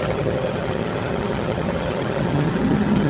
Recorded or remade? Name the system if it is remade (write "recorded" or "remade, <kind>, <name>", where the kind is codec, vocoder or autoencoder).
remade, vocoder, HiFi-GAN